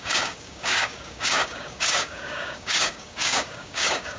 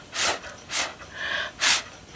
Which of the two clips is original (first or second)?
second